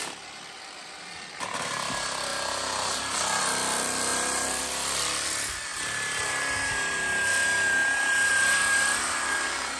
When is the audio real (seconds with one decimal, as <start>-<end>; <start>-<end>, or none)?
0.0-5.7; 6.3-9.8

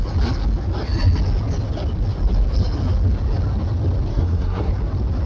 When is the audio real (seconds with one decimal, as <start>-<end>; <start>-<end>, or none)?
0.0-4.1; 4.7-5.3

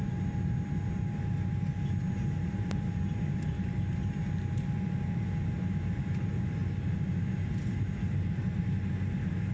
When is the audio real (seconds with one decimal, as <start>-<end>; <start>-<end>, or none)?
0.0-9.5

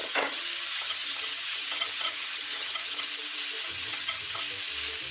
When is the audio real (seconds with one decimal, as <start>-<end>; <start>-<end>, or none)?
3.1-3.6; 4.4-5.1

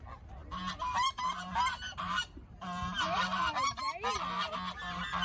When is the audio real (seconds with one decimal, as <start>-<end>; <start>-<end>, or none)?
0.0-0.4; 3.5-5.2

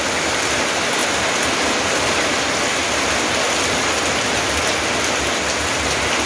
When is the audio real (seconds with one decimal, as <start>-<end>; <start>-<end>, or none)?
0.0-6.3

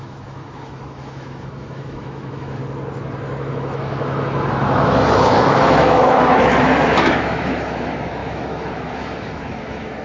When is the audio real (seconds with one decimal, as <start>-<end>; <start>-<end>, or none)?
2.6-3.5

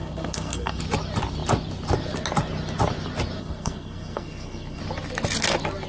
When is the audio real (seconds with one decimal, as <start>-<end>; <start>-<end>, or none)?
0.8-3.4; 4.8-5.9